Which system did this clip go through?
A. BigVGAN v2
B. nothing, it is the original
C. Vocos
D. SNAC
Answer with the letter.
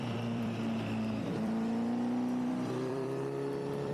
A